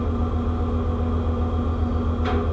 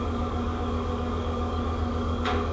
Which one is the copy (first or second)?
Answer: second